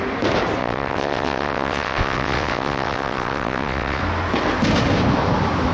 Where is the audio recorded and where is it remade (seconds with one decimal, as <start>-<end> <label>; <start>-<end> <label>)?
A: 0.0-0.6 recorded; 0.6-4.0 remade; 4.0-5.7 recorded